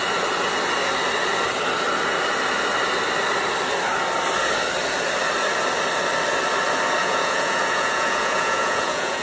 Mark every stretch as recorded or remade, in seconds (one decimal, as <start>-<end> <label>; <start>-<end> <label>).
0.0-7.0 recorded; 7.0-9.2 remade